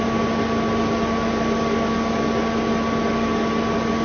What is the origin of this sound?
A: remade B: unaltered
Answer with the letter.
B